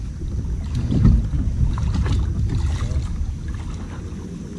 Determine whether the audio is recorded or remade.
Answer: recorded